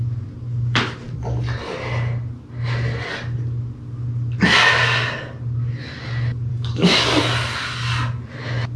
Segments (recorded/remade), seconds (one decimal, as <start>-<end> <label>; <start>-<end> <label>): 0.0-6.5 recorded; 6.5-7.2 remade; 7.2-8.8 recorded